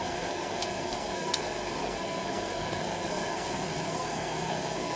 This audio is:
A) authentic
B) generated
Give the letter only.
B